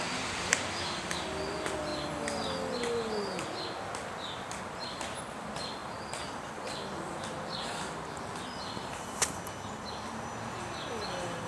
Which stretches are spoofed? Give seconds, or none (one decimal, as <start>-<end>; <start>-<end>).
0.0-1.9; 4.6-11.5